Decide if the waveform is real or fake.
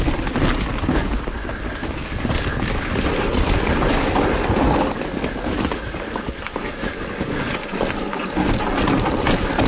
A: real